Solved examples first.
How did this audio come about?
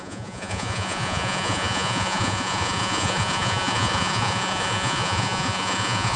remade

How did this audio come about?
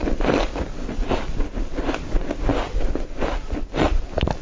recorded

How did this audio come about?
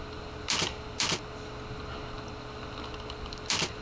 recorded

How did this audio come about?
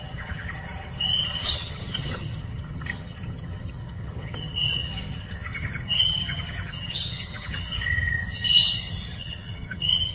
remade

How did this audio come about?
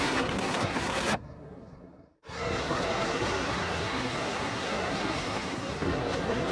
remade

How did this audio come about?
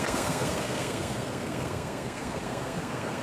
remade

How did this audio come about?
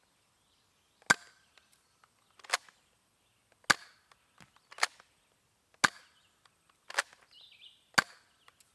recorded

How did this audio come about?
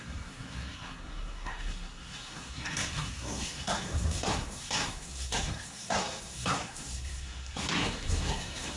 remade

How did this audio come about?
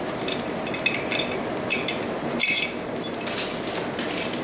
recorded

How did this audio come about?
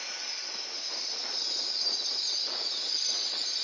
recorded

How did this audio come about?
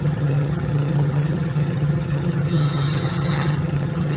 remade